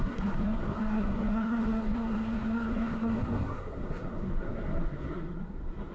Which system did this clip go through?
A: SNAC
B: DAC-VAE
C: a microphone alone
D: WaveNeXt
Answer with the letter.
A